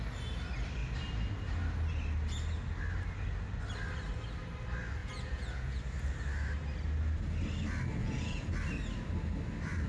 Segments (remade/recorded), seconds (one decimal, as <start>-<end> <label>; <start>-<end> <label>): 0.0-5.0 recorded; 5.0-5.8 remade; 5.8-8.0 recorded; 8.0-8.5 remade; 8.5-9.9 recorded